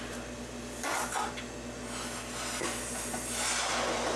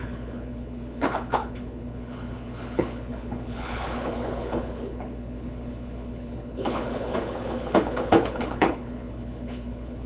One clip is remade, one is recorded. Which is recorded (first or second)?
first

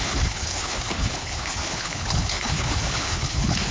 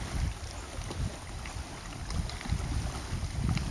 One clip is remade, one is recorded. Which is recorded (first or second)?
second